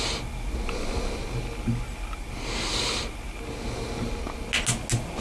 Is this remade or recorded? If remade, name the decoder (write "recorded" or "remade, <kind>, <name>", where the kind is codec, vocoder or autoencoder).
recorded